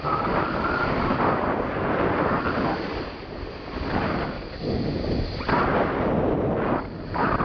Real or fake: real